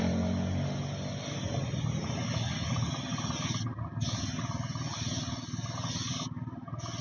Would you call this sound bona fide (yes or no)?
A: yes